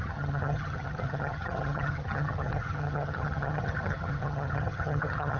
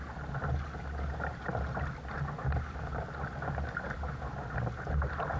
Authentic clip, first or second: second